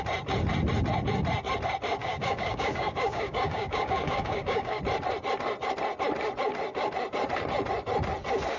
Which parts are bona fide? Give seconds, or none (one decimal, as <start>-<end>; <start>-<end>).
0.0-2.0; 4.8-8.6